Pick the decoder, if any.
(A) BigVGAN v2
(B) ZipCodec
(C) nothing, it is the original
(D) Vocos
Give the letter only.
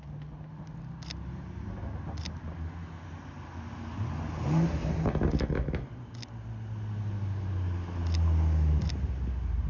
C